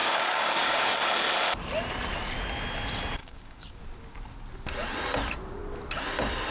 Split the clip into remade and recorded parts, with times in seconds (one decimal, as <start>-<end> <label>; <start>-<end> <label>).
0.0-1.0 remade; 1.0-3.2 recorded; 3.2-3.8 remade; 3.8-6.5 recorded